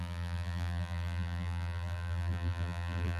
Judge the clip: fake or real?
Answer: fake